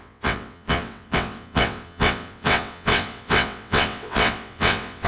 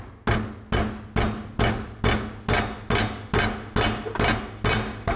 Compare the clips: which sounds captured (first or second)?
second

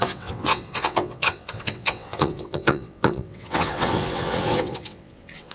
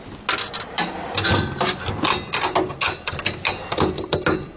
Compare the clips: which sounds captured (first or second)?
second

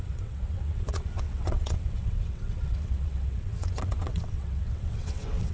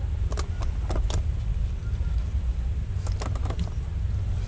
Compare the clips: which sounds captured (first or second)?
second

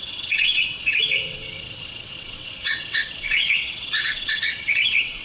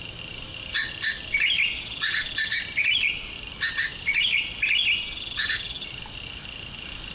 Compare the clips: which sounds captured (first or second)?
second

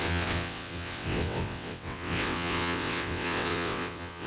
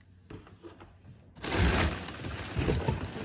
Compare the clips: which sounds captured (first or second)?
second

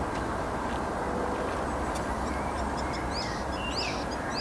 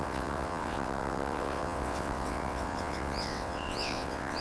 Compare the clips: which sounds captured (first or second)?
first